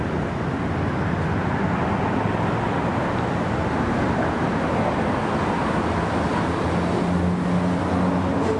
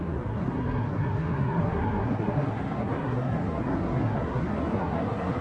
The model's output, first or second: second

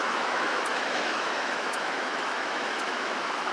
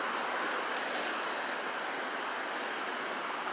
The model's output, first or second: first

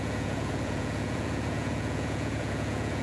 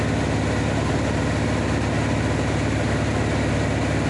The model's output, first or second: first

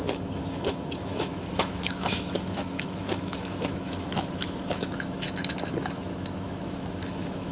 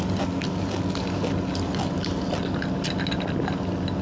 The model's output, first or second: first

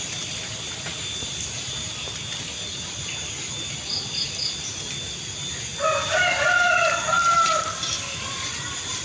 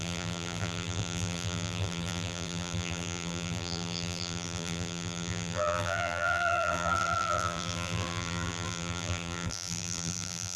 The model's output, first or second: second